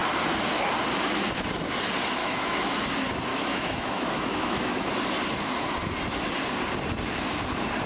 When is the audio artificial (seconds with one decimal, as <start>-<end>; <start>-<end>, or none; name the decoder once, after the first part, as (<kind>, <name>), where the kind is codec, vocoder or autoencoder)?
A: 2.2-2.8 (autoencoder, DAC-VAE); 3.3-4.9